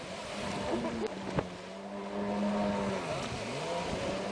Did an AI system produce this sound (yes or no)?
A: no